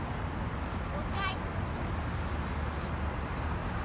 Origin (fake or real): real